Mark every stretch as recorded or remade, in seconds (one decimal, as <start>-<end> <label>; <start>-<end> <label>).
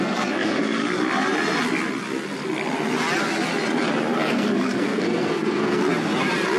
0.0-0.8 remade; 0.8-4.3 recorded; 4.3-5.8 remade; 5.8-6.6 recorded